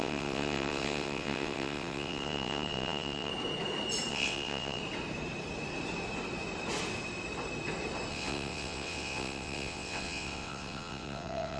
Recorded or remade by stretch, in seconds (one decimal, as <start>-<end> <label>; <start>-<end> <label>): 0.0-3.3 remade; 3.3-4.1 recorded; 4.1-4.8 remade; 4.8-8.1 recorded; 8.1-11.6 remade